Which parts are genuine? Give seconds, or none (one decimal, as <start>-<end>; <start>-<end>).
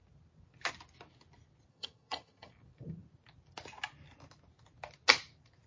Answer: 0.0-1.7; 2.5-5.7